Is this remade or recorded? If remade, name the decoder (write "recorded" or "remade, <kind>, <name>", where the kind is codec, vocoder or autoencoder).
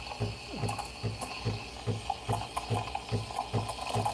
recorded